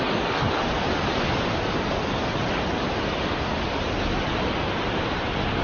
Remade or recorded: recorded